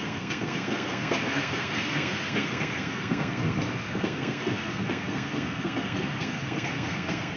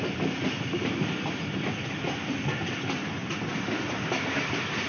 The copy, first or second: first